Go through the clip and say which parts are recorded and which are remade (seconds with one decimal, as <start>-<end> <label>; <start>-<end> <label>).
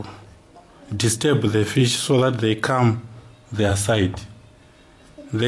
0.0-5.5 recorded